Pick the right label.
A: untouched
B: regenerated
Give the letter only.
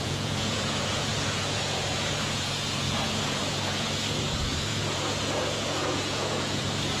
B